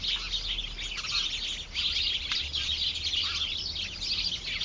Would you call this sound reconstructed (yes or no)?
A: no